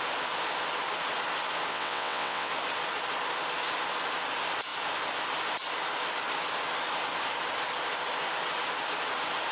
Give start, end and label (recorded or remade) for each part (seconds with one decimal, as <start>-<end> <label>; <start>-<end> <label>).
0.0-1.7 recorded; 1.7-2.5 remade; 2.5-9.5 recorded